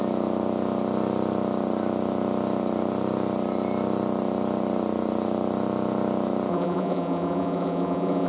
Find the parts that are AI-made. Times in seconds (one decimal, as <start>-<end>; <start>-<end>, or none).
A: 6.5-8.3